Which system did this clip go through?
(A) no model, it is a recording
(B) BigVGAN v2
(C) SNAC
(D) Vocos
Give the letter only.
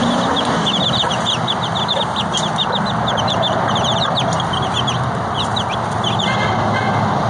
A